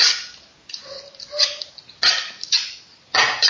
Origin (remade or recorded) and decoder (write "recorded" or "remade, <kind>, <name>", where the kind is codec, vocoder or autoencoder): recorded